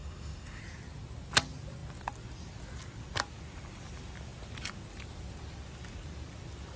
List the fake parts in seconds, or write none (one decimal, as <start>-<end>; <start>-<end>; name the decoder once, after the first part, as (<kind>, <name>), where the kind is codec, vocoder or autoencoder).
0.0-0.6 (autoencoder, DAC-VAE)